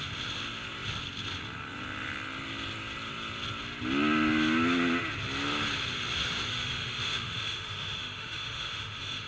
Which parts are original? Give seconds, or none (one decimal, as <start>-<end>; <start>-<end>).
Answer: 0.0-6.5